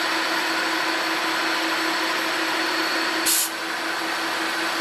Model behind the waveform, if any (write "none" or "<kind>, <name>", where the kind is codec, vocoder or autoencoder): none